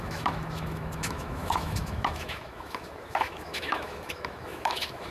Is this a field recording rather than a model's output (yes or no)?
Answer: no